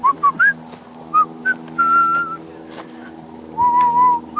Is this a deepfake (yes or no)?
no